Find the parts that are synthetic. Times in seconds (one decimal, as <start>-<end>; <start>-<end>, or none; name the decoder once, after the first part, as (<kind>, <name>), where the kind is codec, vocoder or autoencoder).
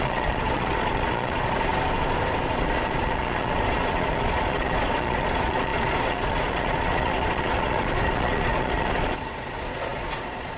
0.0-1.7 (vocoder, Vocos); 2.4-10.6